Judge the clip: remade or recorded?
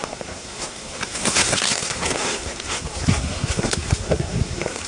remade